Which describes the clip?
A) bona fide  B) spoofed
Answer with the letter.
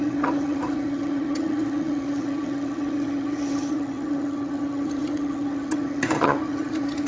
B